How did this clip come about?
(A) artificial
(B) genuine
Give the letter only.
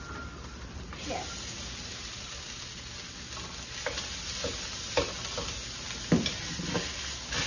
B